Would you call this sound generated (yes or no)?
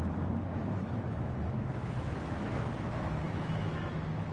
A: yes